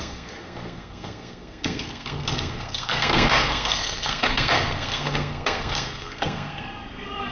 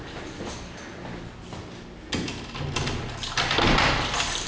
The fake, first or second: first